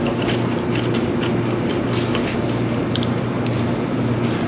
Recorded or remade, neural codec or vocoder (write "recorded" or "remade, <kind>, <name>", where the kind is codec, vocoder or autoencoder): recorded